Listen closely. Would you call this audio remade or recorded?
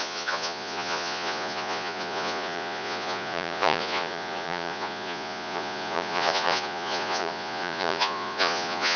remade